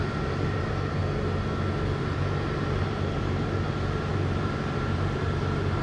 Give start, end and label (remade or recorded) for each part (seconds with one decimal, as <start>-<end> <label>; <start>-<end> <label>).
0.0-1.0 remade; 1.0-2.0 recorded; 2.0-5.8 remade